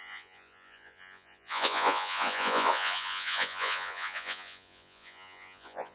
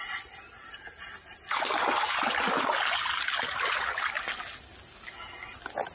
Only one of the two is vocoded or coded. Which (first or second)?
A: first